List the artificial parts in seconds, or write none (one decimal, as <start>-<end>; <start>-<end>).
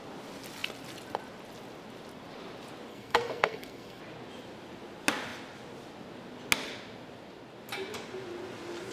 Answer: 2.9-4.0